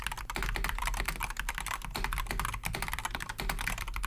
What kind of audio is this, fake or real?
real